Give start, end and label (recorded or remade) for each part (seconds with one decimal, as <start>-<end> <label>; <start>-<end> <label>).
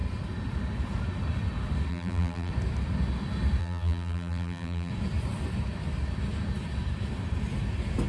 0.0-1.9 recorded; 1.9-2.5 remade; 2.5-3.6 recorded; 3.6-4.9 remade; 4.9-8.1 recorded